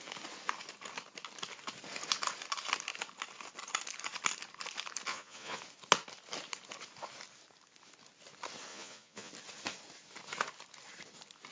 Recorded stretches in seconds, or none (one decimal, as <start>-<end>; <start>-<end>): 0.0-5.1; 5.6-8.7; 9.3-11.5